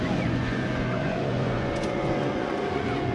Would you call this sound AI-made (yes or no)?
yes